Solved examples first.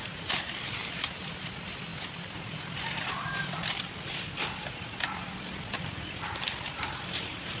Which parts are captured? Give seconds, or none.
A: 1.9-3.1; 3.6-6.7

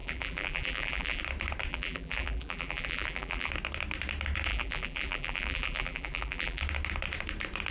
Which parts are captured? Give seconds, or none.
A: 1.2-1.7; 3.5-4.5; 6.6-7.7